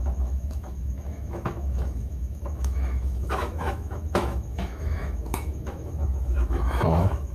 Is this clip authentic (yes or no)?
no